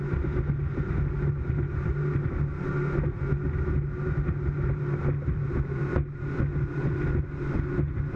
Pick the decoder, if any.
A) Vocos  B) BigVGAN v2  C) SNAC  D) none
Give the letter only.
D